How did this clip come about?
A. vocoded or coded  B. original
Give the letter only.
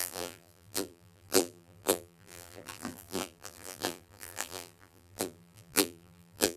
A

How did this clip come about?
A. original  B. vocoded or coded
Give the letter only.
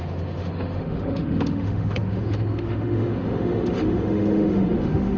B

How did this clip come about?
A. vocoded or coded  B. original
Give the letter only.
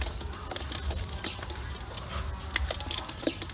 B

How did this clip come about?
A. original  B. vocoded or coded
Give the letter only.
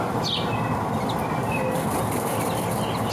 A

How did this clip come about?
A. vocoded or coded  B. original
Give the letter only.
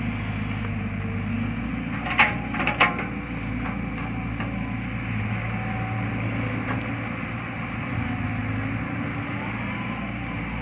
B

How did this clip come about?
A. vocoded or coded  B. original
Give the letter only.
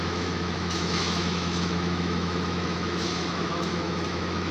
A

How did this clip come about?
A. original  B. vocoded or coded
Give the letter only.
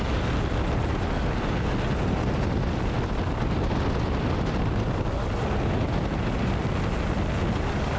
A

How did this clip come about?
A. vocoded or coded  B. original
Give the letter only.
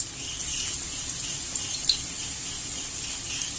B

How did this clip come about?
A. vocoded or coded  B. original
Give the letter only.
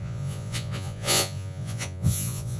A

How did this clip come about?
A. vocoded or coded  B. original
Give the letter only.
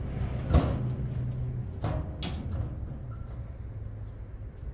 B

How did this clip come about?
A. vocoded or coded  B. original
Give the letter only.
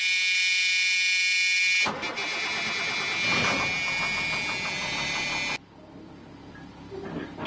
B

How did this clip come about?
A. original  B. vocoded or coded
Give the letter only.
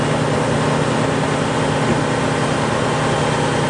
A